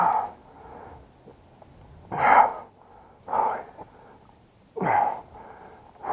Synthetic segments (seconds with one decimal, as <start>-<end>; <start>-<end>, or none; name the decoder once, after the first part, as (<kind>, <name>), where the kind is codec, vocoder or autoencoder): none